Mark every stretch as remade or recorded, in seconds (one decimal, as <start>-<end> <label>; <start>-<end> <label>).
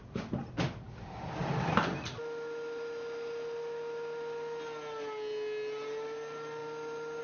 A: 0.0-7.2 recorded